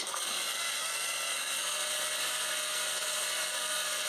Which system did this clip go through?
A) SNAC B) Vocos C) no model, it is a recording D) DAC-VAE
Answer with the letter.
A